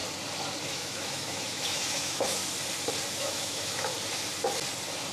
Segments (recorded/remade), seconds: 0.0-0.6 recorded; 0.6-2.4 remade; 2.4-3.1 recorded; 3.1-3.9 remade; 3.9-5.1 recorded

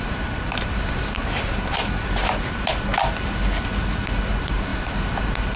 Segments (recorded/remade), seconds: 0.0-2.9 remade; 2.9-4.3 recorded; 4.3-5.6 remade